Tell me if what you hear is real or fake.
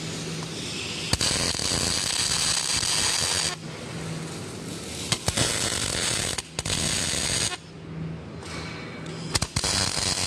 real